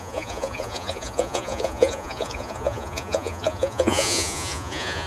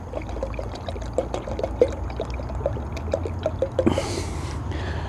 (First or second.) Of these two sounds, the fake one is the first